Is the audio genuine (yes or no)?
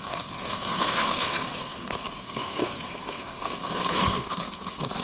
no